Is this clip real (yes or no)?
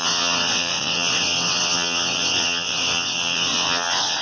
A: no